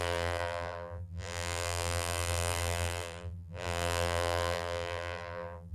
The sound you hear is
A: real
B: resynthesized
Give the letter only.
B